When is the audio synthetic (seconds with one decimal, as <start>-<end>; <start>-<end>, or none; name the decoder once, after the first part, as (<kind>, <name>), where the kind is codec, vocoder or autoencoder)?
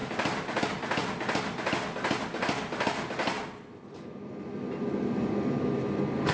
none